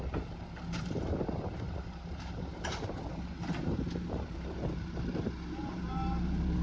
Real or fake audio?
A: fake